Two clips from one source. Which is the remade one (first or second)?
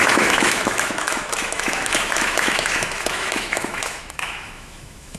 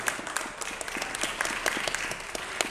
first